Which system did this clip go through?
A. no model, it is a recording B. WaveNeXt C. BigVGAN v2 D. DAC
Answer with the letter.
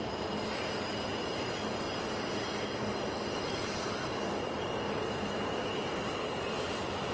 A